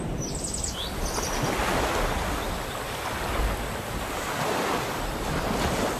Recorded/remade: recorded